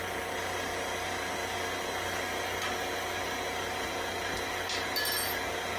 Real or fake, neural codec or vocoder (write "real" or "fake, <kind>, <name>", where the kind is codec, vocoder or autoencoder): real